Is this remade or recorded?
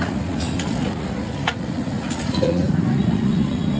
remade